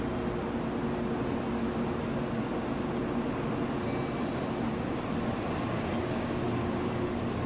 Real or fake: real